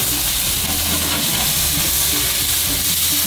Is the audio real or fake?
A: real